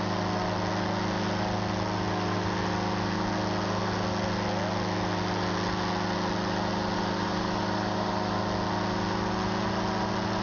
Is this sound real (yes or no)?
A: yes